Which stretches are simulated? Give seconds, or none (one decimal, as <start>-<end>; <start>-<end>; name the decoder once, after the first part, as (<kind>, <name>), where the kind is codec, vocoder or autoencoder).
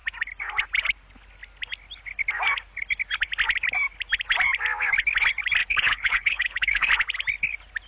5.6-6.9 (codec, HILCodec)